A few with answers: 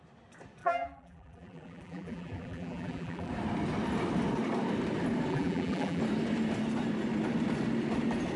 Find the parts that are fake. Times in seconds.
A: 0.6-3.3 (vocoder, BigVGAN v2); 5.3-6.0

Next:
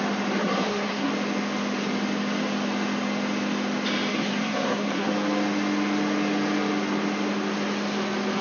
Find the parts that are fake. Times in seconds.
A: 0.4-1.1 (codec, SNAC); 4.1-5.1

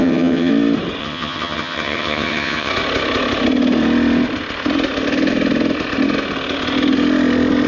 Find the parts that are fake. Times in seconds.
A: 0.0-0.5 (vocoder, HiFi-GAN); 1.0-2.7

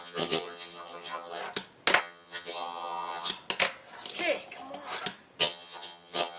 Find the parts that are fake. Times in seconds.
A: 0.0-1.4 (vocoder, HiFi-GAN); 2.0-3.3; 5.4-6.4

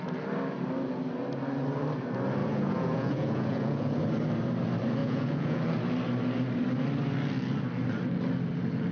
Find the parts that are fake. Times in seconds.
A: 2.4-4.0 (vocoder, Vocos); 5.0-5.6

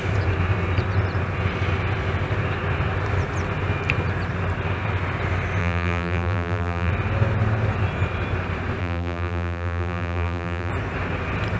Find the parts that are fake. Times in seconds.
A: 5.6-6.9 (vocoder, BigVGAN v2); 8.8-10.7

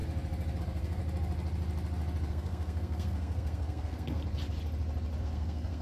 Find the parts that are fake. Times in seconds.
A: 0.6-1.0 (codec, SNAC); 2.3-4.2; 5.2-5.8